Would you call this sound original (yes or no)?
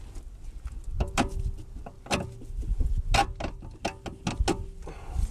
yes